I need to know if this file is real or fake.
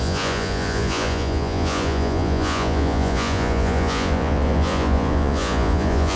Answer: fake